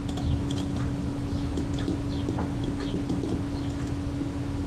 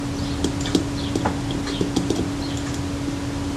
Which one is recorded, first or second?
second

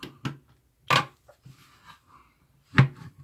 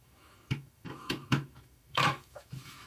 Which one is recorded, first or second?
first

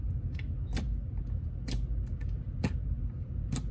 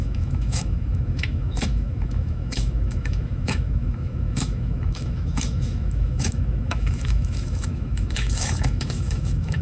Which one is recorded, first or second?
first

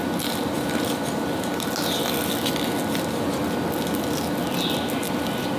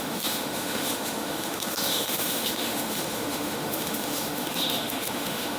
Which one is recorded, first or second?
first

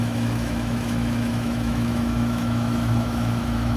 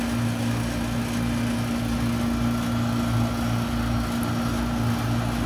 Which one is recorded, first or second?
second